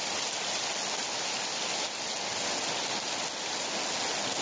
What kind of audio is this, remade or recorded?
recorded